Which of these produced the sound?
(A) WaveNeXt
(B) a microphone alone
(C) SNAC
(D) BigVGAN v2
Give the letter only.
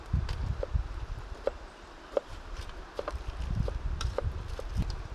D